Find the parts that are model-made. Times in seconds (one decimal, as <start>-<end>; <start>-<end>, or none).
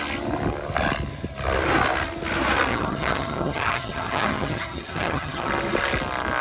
2.7-5.5